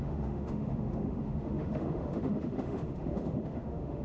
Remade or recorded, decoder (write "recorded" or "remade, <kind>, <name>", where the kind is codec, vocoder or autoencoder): remade, autoencoder, DAC-VAE